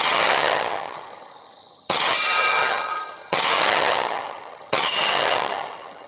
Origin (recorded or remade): remade